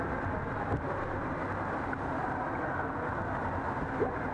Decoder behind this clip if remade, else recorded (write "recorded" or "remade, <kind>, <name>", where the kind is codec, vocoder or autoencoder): recorded